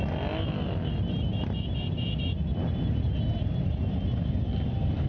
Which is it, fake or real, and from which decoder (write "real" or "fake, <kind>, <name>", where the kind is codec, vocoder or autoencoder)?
real